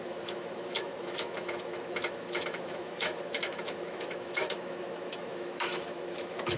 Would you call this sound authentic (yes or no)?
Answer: no